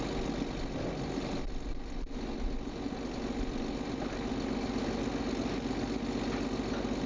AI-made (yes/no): no